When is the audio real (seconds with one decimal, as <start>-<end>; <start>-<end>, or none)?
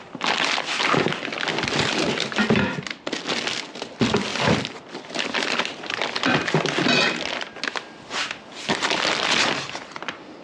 0.0-10.4